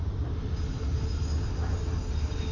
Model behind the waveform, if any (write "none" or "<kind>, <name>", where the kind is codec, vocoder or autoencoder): none